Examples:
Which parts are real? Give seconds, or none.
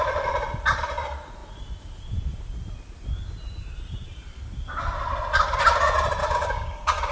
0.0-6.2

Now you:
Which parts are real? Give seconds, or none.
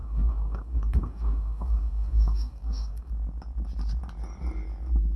3.1-5.2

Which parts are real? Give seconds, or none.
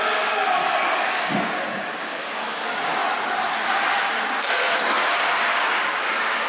0.6-1.1; 3.0-4.5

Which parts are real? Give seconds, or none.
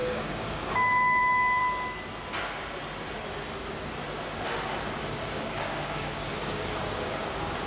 1.6-5.2